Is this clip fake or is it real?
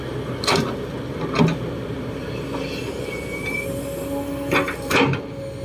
real